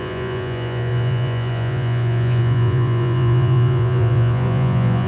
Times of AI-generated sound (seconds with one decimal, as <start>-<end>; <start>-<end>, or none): 0.0-5.1

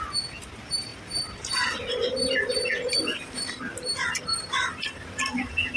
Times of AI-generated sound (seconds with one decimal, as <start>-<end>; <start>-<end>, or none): none

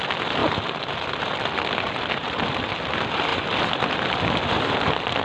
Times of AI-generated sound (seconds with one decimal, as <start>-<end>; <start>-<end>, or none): none

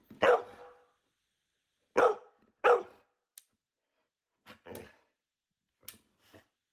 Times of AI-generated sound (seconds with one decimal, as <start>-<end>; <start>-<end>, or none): none

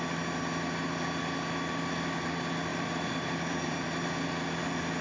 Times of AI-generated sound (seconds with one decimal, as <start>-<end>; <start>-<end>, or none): 2.7-4.0

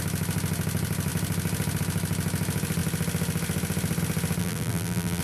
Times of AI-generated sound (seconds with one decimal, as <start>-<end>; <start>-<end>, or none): 4.4-5.2

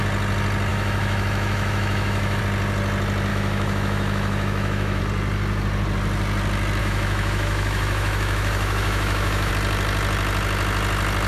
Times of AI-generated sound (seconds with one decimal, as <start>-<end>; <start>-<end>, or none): 0.7-2.4; 3.3-5.0; 6.8-9.5